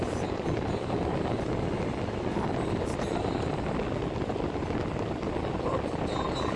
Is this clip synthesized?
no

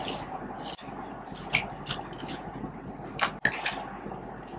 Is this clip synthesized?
no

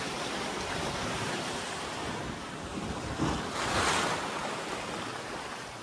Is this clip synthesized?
no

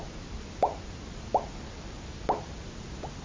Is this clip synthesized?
no